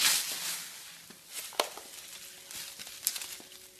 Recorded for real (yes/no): yes